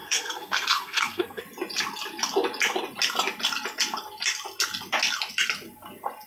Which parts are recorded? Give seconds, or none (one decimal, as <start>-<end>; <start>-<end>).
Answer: 1.4-6.3